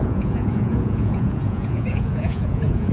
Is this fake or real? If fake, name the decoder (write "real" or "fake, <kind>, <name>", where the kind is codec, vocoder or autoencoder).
fake, vocoder, Vocos